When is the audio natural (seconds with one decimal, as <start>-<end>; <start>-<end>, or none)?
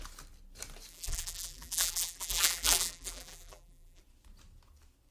0.0-0.9; 4.0-5.1